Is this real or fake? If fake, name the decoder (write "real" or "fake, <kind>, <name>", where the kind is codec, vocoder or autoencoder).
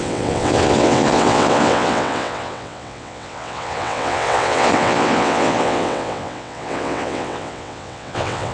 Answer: fake, vocoder, WaveNeXt